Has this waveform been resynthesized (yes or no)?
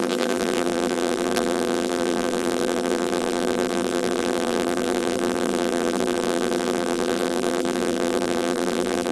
yes